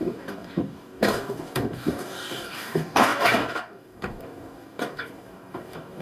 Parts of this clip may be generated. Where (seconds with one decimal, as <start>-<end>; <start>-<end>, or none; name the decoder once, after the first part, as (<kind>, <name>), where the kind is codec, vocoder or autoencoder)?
0.0-6.0 (codec, DAC)